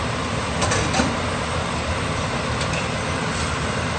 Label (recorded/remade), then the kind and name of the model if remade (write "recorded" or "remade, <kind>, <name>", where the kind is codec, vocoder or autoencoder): recorded